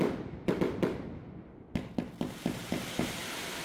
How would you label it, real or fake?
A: real